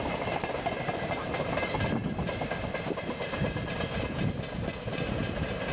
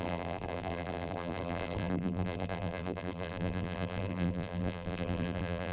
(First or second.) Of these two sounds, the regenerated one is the second